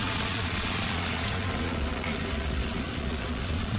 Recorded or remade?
remade